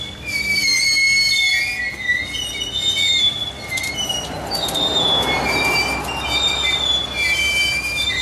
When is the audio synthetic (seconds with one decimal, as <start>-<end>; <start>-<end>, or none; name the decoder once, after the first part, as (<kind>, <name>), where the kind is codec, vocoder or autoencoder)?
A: none